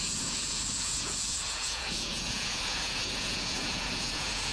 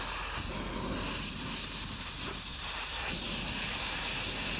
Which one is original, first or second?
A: second